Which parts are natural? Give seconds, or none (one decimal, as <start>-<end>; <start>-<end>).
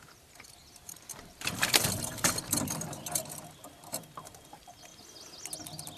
4.9-6.0